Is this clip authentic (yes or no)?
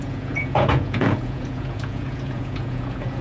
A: no